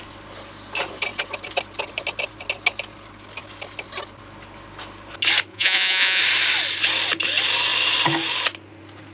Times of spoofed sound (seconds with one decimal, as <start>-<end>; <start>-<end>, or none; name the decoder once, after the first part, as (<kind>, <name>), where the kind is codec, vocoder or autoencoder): 5.5-6.2 (vocoder, Vocos)